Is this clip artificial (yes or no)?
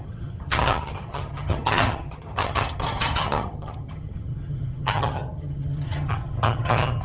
yes